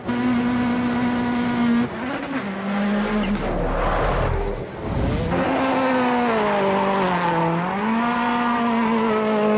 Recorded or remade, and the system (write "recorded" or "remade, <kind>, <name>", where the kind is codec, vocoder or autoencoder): recorded